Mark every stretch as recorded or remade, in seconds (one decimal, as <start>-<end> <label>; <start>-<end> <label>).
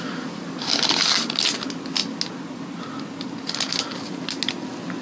0.0-5.0 recorded